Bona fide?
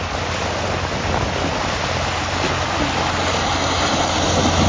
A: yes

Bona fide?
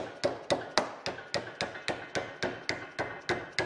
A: yes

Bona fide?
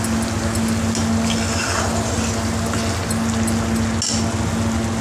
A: yes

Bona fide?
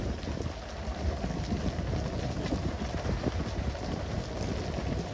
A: yes